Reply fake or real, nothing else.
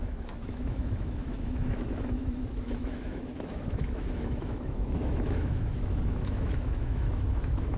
fake